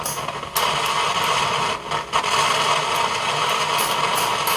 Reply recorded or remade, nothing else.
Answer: recorded